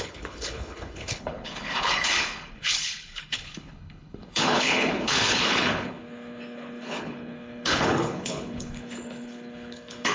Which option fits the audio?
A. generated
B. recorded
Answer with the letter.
A